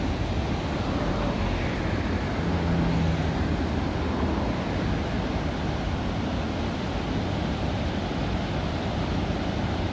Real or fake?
real